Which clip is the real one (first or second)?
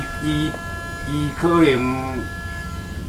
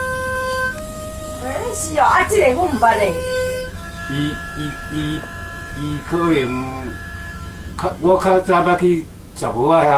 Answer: first